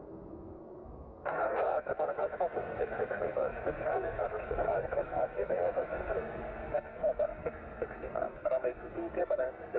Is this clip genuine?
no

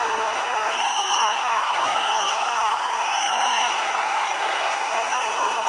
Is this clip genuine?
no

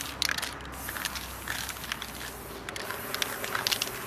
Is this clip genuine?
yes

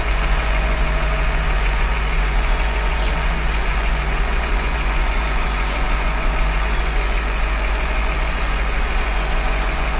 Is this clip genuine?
no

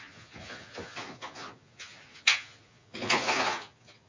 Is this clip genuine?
no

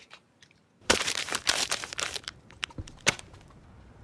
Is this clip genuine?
no